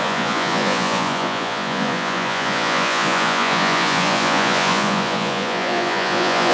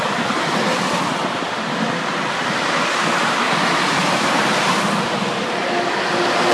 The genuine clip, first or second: second